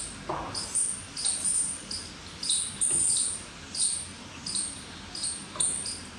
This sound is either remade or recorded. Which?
recorded